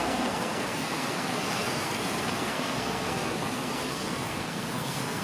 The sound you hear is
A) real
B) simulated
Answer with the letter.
B